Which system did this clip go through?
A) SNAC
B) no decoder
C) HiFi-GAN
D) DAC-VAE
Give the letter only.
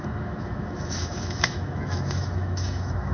D